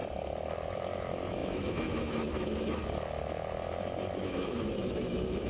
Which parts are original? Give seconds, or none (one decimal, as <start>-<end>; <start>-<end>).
0.0-0.7; 2.8-4.1